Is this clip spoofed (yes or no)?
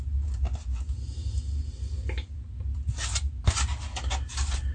no